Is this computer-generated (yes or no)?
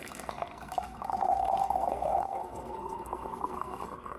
yes